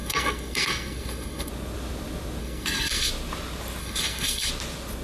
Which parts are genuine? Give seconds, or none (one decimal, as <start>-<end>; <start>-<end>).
1.5-2.4; 3.1-3.8; 4.5-5.0